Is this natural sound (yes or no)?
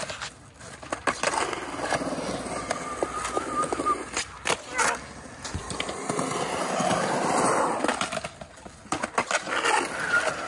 yes